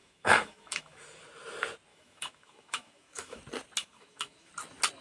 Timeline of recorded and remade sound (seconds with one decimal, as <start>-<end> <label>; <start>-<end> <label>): 0.0-1.0 remade; 1.0-1.9 recorded; 1.9-3.4 remade; 3.4-3.8 recorded; 3.8-4.5 remade; 4.5-5.0 recorded